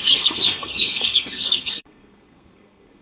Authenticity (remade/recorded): remade